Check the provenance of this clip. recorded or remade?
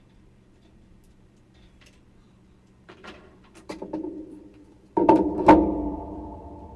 remade